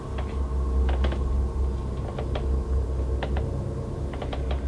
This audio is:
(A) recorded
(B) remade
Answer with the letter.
A